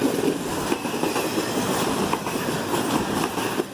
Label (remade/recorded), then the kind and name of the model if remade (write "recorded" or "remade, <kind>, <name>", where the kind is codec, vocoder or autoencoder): recorded